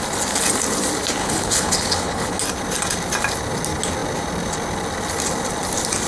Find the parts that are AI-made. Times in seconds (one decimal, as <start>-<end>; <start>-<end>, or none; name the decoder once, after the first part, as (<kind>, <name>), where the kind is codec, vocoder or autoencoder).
1.2-2.4 (codec, HILCodec)